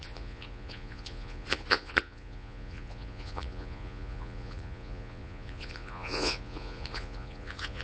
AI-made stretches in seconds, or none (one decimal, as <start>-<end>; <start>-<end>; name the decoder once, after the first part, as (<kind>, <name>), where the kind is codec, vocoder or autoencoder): 0.0-7.8 (vocoder, Vocos)